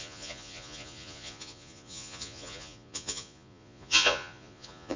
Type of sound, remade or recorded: remade